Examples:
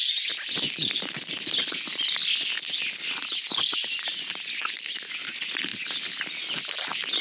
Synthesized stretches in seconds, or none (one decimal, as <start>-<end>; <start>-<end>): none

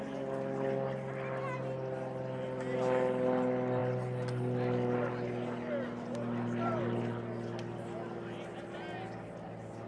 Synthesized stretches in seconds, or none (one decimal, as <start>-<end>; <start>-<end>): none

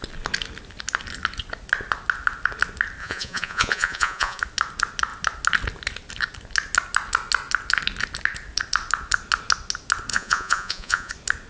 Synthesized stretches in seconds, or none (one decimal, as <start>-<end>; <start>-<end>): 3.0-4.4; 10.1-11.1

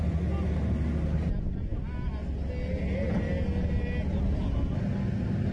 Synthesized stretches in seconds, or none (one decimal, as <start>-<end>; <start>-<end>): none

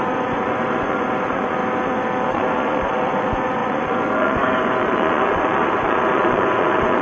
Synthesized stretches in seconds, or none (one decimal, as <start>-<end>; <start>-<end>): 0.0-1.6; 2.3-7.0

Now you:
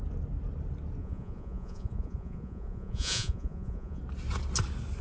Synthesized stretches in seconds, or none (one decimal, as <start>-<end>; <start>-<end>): 1.0-4.0

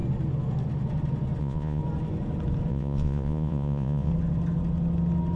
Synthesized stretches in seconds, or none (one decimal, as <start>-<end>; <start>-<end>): 1.4-1.8; 2.7-4.1

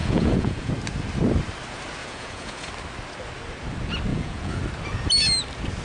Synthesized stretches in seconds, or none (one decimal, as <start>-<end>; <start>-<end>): 0.0-0.7; 2.0-2.7; 4.1-4.6